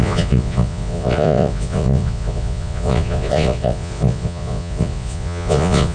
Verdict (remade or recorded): remade